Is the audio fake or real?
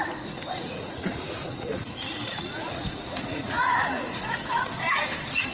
fake